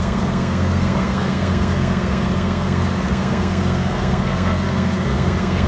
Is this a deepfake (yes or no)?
yes